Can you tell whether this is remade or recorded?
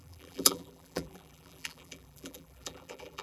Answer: remade